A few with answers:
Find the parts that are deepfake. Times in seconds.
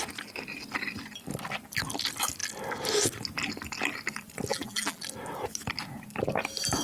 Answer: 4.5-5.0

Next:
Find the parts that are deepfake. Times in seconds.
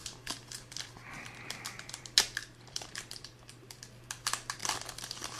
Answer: 0.0-2.0; 2.4-3.8; 4.6-5.4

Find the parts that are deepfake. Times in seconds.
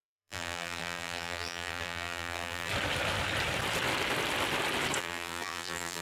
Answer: 0.0-2.7; 5.0-6.0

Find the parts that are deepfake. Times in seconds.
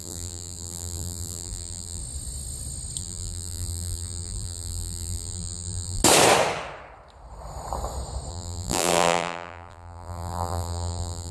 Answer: 0.0-2.0; 3.0-6.0; 8.3-11.3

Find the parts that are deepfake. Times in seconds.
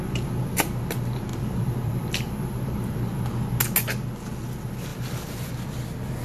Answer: 1.3-3.3; 4.9-5.5